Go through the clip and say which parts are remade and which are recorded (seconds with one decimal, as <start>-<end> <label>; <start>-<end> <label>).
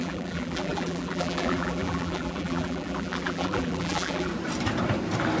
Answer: 0.0-4.3 remade; 4.3-5.4 recorded